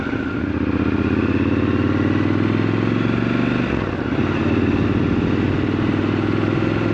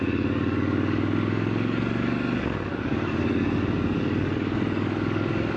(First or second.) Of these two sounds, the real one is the first